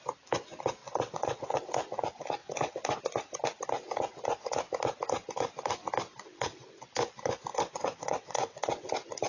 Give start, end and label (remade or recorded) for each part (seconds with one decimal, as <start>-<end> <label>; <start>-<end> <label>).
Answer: 0.0-0.8 recorded; 0.8-1.7 remade; 1.7-2.4 recorded; 2.4-3.0 remade; 3.0-6.1 recorded; 6.1-6.8 remade; 6.8-7.5 recorded; 7.5-8.9 remade; 8.9-9.3 recorded